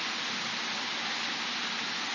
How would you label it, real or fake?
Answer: real